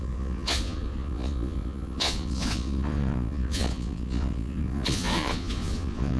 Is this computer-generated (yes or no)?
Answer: yes